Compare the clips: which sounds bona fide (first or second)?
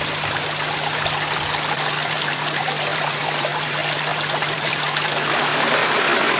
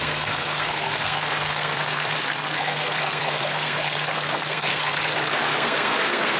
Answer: first